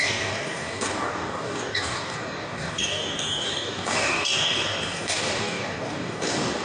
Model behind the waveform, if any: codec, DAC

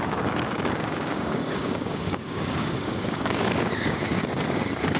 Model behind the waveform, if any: codec, DAC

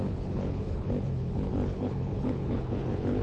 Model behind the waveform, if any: codec, HILCodec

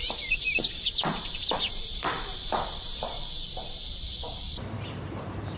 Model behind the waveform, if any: vocoder, BigVGAN v2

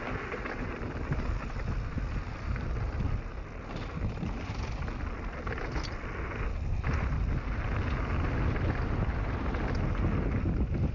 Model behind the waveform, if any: none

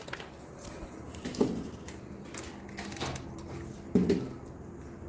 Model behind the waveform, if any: none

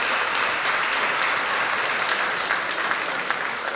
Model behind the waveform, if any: none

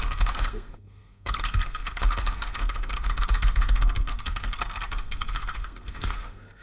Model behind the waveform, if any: codec, SNAC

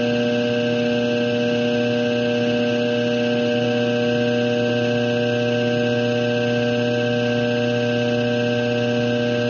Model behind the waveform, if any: none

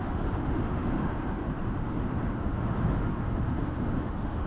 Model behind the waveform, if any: autoencoder, DAC-VAE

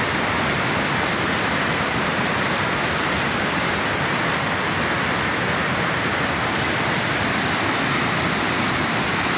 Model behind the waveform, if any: vocoder, BigVGAN v2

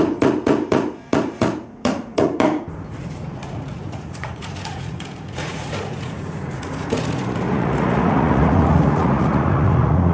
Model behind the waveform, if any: vocoder, Vocos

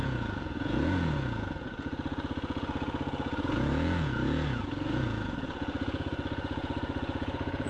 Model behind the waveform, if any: vocoder, Vocos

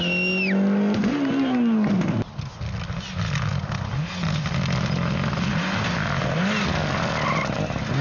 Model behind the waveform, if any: none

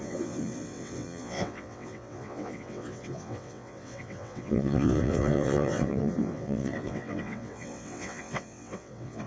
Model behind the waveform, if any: vocoder, WaveNeXt